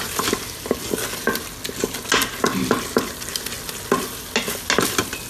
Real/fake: real